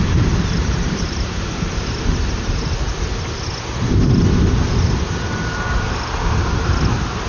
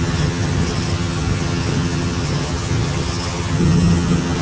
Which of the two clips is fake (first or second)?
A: second